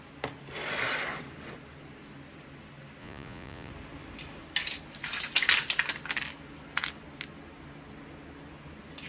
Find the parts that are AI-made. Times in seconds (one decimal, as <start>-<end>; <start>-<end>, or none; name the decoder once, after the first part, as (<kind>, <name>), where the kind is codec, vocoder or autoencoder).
3.0-3.7 (vocoder, Vocos)